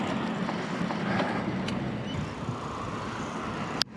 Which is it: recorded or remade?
recorded